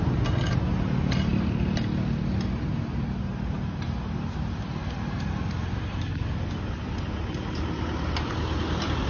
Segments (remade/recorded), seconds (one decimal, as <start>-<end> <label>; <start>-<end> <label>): 0.0-9.1 recorded